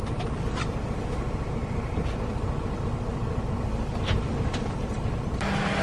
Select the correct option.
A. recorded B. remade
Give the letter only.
A